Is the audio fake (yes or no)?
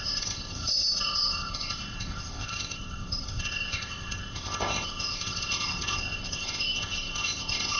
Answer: yes